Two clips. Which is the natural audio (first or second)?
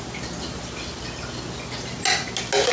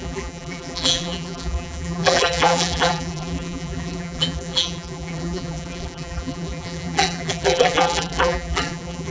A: first